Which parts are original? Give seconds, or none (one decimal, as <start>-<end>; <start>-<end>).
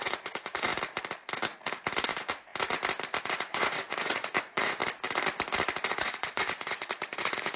0.7-2.0; 2.5-3.2; 4.8-5.9